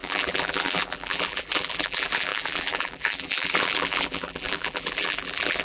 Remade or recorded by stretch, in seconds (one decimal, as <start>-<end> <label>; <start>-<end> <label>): 0.0-5.6 remade